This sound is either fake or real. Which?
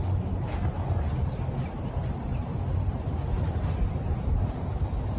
real